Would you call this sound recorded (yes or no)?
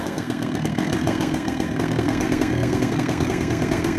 no